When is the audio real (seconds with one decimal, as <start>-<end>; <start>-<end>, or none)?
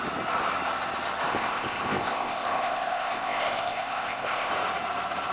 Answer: 0.0-1.3; 4.5-5.3